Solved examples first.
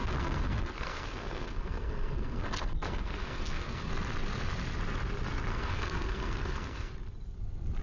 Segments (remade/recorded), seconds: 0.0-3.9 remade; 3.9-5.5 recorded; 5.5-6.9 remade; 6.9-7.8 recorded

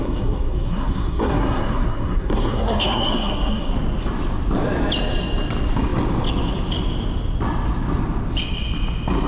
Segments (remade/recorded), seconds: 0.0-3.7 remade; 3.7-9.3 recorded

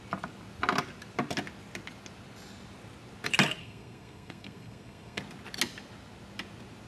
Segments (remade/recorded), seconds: 0.0-3.6 recorded; 3.6-5.2 remade; 5.2-6.9 recorded